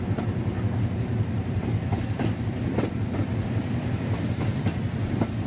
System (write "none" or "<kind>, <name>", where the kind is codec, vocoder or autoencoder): vocoder, BigVGAN v2